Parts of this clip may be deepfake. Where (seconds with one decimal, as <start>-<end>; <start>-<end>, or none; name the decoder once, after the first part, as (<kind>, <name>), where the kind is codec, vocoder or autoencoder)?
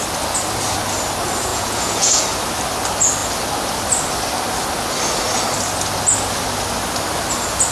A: 1.5-2.2 (vocoder, Vocos)